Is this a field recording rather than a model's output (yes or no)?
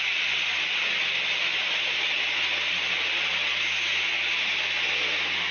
yes